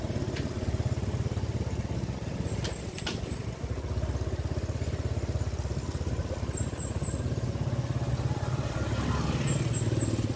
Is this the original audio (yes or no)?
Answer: yes